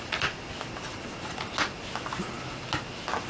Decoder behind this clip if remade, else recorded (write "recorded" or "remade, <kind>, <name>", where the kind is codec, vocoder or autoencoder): recorded